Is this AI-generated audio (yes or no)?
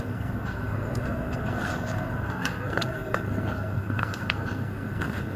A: yes